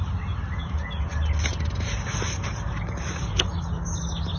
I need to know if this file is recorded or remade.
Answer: recorded